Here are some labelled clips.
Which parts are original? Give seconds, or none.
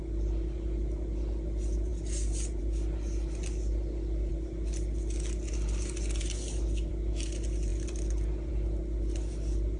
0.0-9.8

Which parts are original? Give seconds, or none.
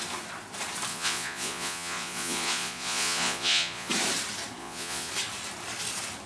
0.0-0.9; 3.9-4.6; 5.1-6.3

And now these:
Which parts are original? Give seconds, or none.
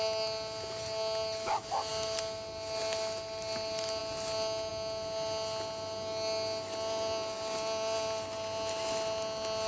0.0-9.7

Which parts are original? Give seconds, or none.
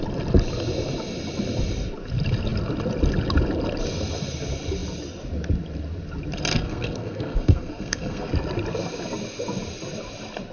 0.0-6.5; 8.3-10.5